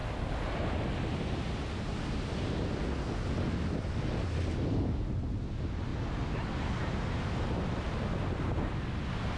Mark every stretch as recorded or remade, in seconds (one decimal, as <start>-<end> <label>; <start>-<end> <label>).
0.0-9.4 recorded